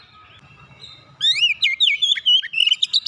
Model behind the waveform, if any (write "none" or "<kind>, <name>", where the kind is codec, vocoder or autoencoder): none